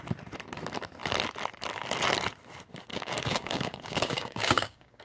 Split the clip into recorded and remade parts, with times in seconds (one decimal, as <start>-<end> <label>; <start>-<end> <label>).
0.0-2.9 recorded; 2.9-5.0 remade